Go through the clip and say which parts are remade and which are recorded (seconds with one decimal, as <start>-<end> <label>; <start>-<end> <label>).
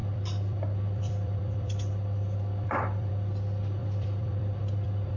0.0-3.1 remade; 3.1-3.8 recorded; 3.8-5.2 remade